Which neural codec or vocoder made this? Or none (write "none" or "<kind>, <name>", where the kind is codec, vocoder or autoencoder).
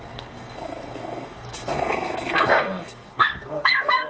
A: codec, SNAC